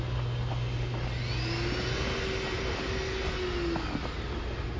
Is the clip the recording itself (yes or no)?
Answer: yes